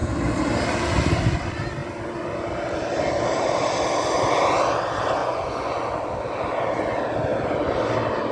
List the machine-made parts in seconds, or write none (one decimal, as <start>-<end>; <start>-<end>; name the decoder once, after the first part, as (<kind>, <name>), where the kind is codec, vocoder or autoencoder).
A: 5.2-5.9 (vocoder, Vocos)